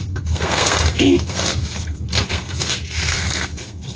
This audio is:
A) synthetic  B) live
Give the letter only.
A